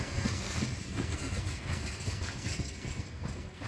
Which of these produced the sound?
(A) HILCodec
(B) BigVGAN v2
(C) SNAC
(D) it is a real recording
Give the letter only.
C